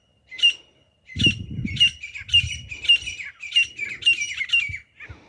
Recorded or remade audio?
remade